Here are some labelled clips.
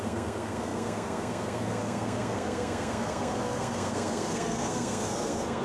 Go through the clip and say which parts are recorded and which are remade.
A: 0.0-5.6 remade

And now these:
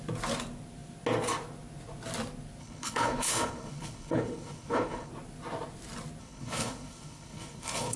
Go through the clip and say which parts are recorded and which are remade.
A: 0.0-2.6 recorded; 2.6-5.1 remade; 5.1-6.2 recorded; 6.2-8.0 remade

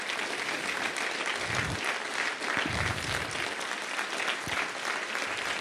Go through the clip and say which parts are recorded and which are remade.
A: 0.0-5.6 recorded

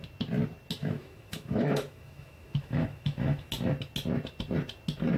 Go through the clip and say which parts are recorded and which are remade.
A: 0.0-0.8 recorded; 0.8-3.5 remade; 3.5-5.2 recorded

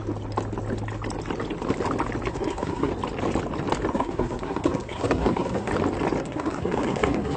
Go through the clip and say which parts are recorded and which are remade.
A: 0.0-2.3 recorded; 2.3-2.9 remade; 2.9-3.9 recorded; 3.9-5.7 remade; 5.7-6.2 recorded; 6.2-7.4 remade